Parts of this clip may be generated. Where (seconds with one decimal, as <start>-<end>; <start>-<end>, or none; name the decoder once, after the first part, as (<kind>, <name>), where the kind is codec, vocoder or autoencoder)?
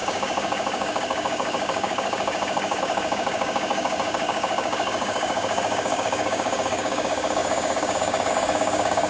0.0-9.1 (codec, DAC)